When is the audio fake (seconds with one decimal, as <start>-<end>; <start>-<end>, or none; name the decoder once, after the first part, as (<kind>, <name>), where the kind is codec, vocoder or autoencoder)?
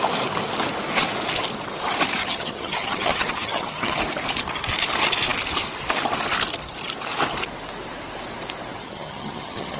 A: 2.2-4.0 (vocoder, HiFi-GAN); 8.8-9.8